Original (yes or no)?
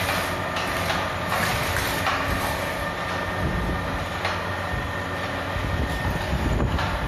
yes